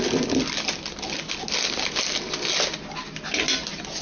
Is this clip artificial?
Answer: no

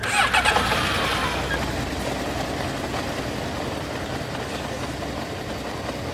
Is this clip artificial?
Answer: no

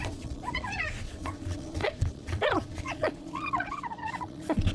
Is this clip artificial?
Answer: yes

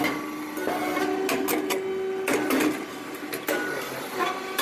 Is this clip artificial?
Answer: no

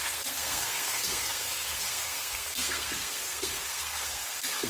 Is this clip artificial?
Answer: yes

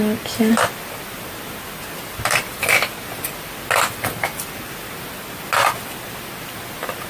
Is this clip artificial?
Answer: no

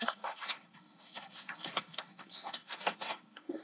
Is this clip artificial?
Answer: yes